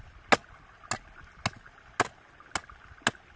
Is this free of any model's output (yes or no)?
yes